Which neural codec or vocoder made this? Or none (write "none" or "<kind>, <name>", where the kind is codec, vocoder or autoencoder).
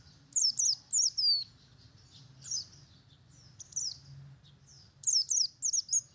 none